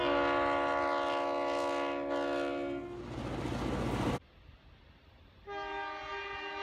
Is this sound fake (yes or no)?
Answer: no